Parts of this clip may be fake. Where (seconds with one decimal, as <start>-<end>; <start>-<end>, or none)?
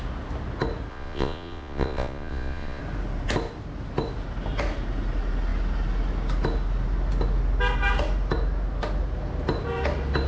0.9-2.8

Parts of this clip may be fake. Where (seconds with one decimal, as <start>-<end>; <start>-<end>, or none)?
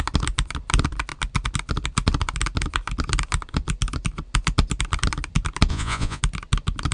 5.7-6.2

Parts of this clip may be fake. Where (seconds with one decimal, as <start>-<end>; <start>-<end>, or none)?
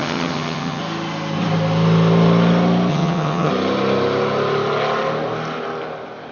0.0-0.8; 2.9-3.5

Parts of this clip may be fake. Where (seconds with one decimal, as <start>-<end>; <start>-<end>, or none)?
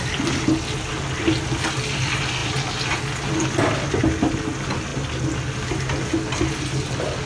none